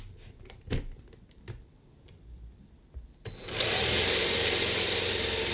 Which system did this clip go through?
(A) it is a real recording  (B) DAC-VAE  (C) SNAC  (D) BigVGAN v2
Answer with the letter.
A